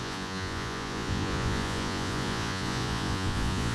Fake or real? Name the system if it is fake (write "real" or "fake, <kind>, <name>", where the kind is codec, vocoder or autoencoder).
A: fake, vocoder, Vocos